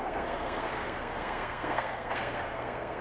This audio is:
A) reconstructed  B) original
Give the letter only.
A